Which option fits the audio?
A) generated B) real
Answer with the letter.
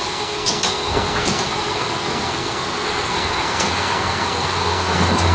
A